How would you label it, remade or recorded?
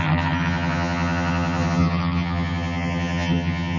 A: remade